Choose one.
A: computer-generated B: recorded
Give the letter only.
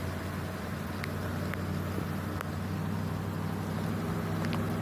B